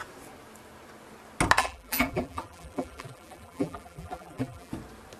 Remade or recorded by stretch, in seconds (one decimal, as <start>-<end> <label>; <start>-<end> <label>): 0.0-1.6 recorded; 1.6-4.7 remade; 4.7-5.2 recorded